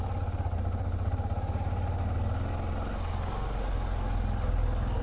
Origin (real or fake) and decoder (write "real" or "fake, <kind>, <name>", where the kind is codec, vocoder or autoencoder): real